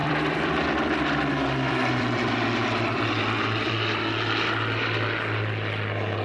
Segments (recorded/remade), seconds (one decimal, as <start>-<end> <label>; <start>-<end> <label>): 0.0-3.7 remade; 3.7-6.2 recorded